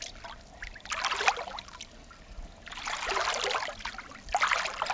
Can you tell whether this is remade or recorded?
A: recorded